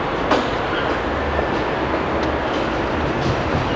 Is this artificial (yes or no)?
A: no